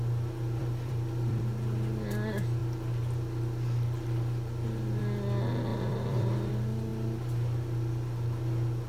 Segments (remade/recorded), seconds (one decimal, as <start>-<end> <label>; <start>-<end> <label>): 0.0-0.6 recorded; 0.6-1.5 remade; 1.5-5.7 recorded; 5.7-6.5 remade; 6.5-8.9 recorded